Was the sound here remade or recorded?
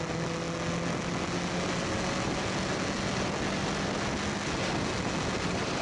recorded